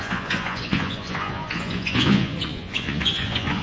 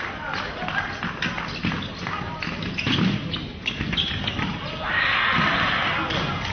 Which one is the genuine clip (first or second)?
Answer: second